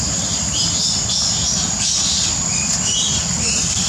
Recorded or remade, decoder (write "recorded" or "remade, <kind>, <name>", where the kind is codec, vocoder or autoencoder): recorded